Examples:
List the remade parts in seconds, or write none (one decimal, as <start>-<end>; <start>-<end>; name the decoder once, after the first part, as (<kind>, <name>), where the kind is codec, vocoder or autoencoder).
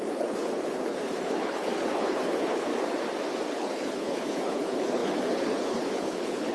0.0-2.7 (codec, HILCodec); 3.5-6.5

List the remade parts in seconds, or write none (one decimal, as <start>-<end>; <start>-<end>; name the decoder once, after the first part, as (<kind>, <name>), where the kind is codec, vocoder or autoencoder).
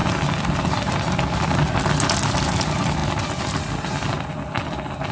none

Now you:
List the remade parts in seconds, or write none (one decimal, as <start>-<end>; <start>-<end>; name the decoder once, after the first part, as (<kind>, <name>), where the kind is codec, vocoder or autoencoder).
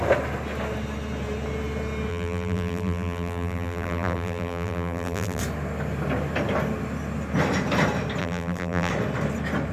2.1-5.4 (vocoder, BigVGAN v2); 8.2-8.9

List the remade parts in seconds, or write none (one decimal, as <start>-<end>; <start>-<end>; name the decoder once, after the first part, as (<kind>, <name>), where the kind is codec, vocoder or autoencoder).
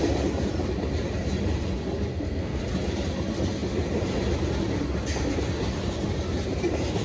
2.1-2.6 (codec, SNAC)